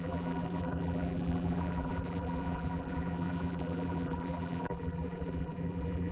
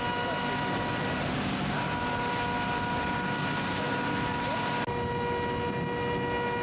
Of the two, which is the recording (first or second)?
second